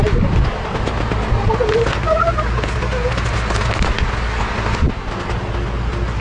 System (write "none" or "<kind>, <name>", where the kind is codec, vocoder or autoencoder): none